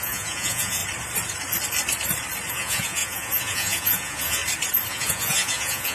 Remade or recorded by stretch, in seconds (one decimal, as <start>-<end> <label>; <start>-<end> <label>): 0.0-0.8 remade; 0.8-2.5 recorded; 2.5-4.4 remade; 4.4-4.9 recorded; 4.9-5.9 remade